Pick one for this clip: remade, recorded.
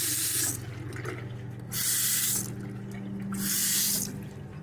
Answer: recorded